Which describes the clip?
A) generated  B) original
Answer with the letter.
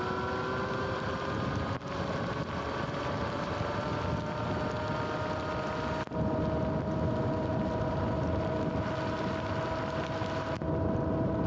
B